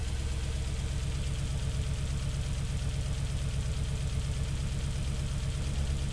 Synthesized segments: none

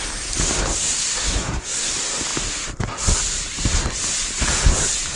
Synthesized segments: 0.8-1.9 (codec, SNAC)

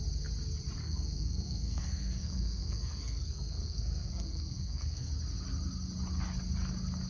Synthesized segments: 0.8-5.1 (codec, SNAC)

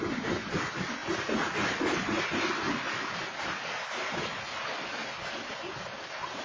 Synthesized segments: none

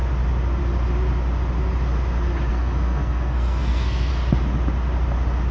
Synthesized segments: 2.5-4.1 (codec, SNAC)

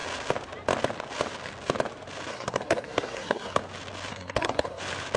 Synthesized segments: 2.3-3.6 (codec, SNAC); 4.1-4.8

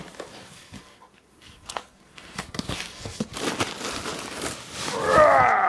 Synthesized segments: 0.4-3.2 (codec, SNAC)

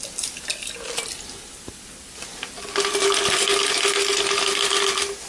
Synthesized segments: none